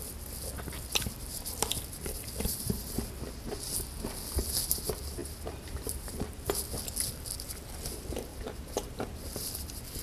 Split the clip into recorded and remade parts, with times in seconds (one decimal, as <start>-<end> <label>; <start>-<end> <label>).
0.0-5.2 recorded; 5.2-6.4 remade; 6.4-8.3 recorded; 8.3-9.1 remade; 9.1-10.0 recorded